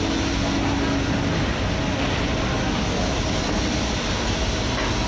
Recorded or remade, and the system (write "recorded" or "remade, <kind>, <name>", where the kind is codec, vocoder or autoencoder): recorded